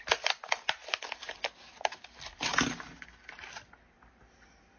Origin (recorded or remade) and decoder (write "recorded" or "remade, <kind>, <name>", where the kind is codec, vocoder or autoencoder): recorded